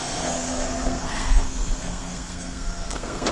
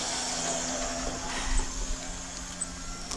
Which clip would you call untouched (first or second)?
second